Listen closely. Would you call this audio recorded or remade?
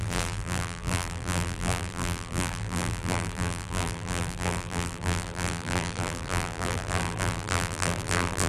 remade